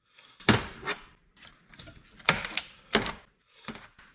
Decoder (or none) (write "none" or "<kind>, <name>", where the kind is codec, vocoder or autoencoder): vocoder, BigVGAN v2